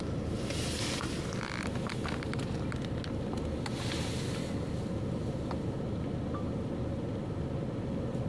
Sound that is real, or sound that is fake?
real